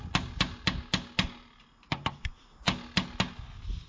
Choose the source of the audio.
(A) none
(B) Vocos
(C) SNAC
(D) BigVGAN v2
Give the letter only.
A